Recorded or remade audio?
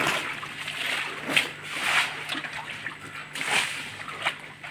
recorded